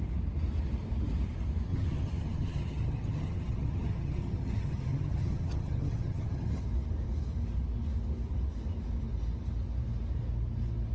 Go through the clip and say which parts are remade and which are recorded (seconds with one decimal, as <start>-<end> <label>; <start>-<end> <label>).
0.0-1.7 recorded; 1.7-6.6 remade; 6.6-10.9 recorded